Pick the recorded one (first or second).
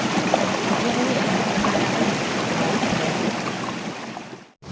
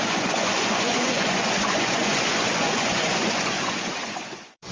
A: first